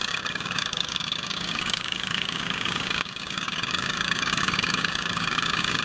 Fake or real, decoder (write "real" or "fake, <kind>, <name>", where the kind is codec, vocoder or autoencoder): fake, codec, DAC